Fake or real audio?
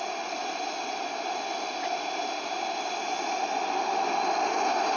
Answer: real